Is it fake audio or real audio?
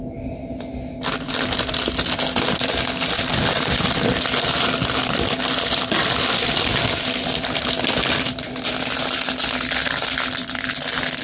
real